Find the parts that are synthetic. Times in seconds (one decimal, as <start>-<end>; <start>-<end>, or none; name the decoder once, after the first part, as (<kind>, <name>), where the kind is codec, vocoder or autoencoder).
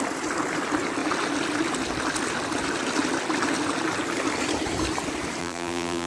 5.4-6.1 (vocoder, BigVGAN v2)